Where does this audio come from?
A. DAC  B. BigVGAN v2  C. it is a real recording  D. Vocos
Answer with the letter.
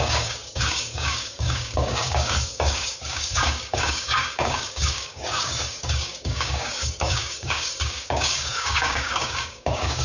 A